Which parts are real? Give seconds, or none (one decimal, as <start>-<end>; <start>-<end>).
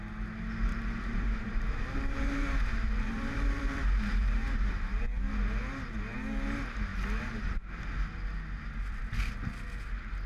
0.0-0.7; 5.0-10.3